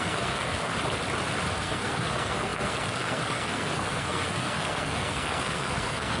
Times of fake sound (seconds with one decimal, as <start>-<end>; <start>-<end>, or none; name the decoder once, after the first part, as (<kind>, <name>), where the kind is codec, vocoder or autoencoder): 0.0-0.7 (codec, SNAC); 1.5-6.2